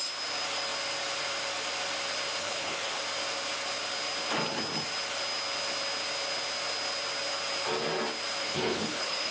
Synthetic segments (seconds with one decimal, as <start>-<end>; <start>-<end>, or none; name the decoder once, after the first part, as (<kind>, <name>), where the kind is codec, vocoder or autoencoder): 2.4-3.0 (codec, HILCodec); 8.4-9.3